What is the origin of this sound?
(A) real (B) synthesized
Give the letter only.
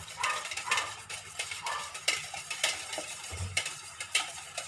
B